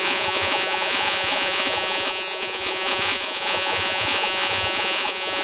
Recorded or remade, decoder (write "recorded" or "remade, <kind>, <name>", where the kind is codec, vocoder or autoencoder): remade, vocoder, Vocos